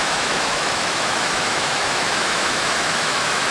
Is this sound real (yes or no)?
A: no